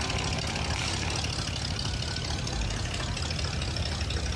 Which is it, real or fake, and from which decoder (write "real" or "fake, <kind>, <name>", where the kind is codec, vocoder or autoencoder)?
real